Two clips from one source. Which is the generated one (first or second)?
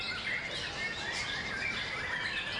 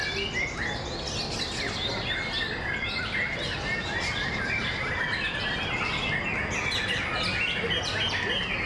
first